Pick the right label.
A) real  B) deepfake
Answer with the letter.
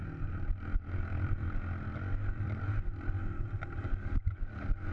A